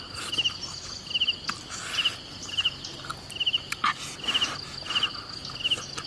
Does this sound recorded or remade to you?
recorded